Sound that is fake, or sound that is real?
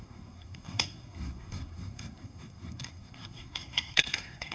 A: fake